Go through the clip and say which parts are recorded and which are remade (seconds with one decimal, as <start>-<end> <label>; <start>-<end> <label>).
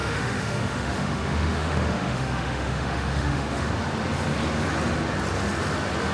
0.0-3.7 remade; 3.7-6.1 recorded